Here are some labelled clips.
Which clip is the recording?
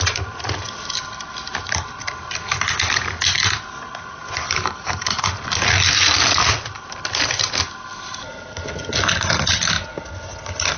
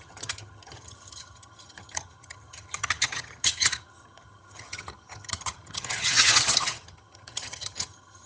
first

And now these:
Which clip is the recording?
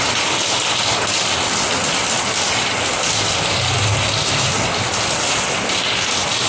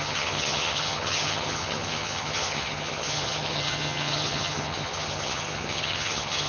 first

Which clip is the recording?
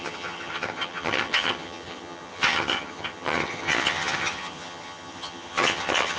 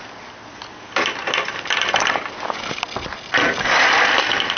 second